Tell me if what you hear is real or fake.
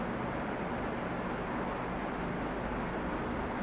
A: real